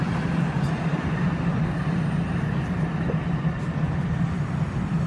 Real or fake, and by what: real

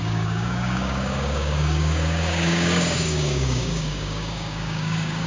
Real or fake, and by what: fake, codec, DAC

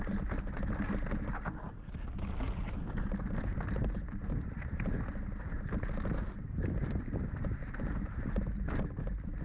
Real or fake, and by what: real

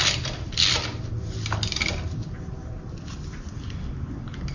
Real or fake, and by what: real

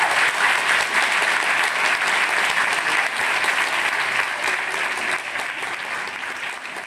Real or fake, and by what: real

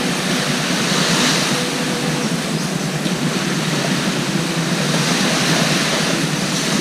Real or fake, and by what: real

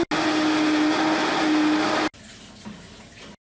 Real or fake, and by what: real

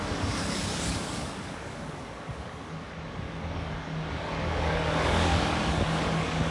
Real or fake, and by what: fake, codec, DAC